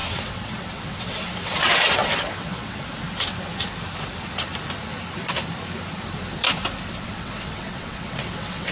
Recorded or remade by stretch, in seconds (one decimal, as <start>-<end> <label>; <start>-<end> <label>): 0.0-2.9 remade; 2.9-6.9 recorded; 6.9-8.7 remade